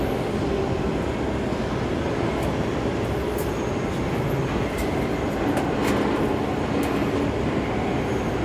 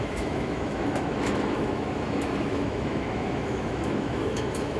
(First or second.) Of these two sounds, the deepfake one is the second